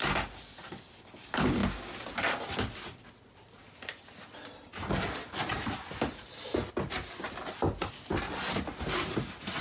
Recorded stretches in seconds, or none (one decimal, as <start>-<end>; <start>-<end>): 0.0-9.6